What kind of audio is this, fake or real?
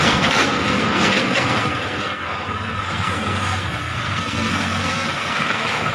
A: fake